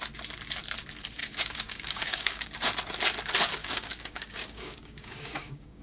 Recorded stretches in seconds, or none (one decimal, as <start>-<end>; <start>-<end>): 0.0-1.2; 2.6-3.6